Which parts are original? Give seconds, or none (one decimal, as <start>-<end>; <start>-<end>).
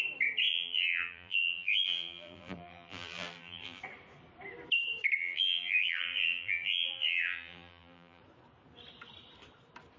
0.0-0.5; 3.8-5.2; 8.2-10.0